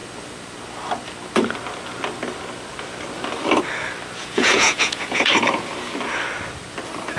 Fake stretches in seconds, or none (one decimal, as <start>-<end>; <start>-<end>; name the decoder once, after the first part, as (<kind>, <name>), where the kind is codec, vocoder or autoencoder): 4.2-5.3 (vocoder, Vocos)